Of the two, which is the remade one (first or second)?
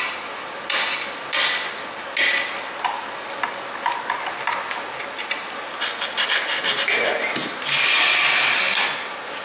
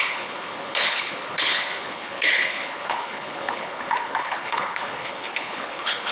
second